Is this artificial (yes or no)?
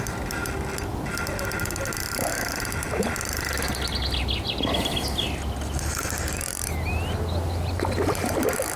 no